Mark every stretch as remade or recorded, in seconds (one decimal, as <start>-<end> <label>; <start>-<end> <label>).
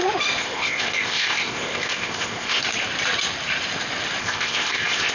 0.0-0.4 recorded; 0.4-2.6 remade; 2.6-4.2 recorded; 4.2-5.1 remade